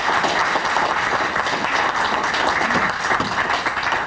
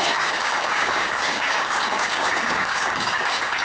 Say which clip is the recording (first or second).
first